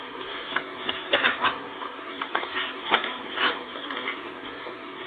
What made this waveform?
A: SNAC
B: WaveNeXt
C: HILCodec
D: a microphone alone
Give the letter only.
A